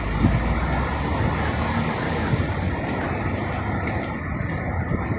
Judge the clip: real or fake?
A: real